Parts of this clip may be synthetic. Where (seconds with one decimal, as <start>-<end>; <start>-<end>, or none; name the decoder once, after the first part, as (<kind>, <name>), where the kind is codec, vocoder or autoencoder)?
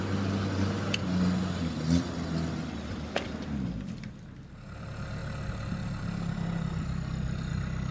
none